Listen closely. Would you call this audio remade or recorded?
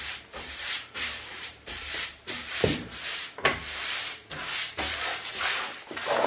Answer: remade